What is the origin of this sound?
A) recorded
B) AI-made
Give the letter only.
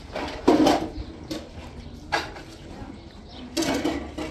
A